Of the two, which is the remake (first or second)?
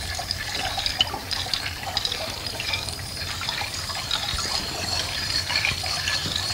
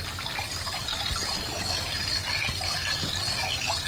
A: first